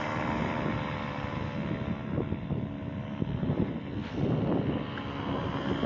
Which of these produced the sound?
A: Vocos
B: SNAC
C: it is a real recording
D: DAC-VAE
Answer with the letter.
C